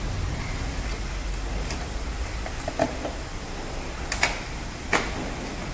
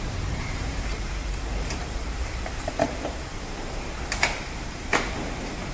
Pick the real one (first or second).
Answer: first